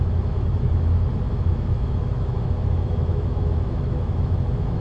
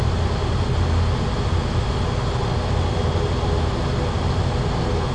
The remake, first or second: first